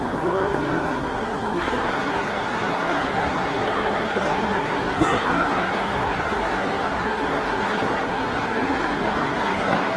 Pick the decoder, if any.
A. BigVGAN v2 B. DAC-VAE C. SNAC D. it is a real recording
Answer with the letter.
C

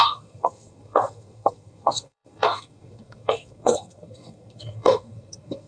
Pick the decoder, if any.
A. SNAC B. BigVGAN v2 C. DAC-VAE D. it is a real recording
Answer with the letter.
A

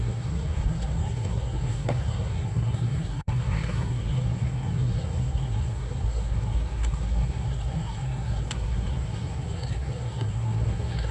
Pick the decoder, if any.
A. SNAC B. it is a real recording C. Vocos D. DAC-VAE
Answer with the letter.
A